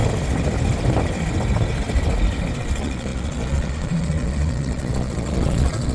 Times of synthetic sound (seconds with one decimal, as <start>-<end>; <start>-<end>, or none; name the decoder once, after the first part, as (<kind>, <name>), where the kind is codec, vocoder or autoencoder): 2.6-5.9 (vocoder, Vocos)